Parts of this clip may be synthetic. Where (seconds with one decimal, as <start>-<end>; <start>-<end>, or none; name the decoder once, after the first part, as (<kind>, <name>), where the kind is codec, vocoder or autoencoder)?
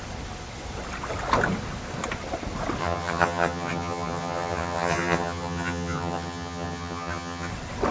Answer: 2.8-7.5 (vocoder, HiFi-GAN)